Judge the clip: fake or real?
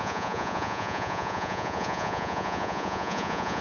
fake